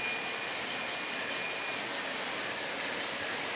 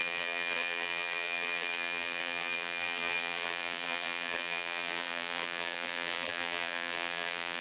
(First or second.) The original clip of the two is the first